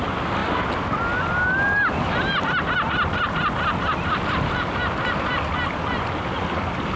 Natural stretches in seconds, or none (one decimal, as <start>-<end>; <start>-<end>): 0.0-7.0